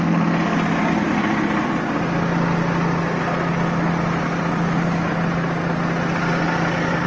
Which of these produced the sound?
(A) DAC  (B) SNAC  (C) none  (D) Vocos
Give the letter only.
C